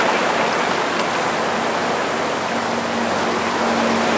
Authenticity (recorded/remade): recorded